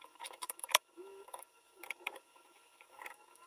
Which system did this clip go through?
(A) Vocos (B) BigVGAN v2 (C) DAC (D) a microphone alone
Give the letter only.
C